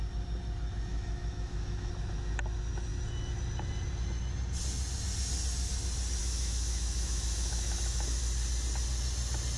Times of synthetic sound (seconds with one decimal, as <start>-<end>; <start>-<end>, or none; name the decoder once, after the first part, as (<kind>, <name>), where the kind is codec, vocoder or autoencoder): 0.9-1.9 (autoencoder, DAC-VAE); 6.2-8.2